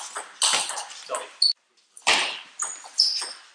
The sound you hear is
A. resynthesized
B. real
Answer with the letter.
B